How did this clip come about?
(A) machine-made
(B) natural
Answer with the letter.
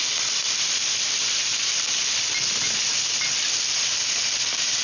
B